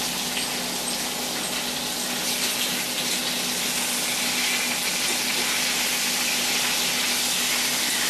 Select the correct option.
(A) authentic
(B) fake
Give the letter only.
A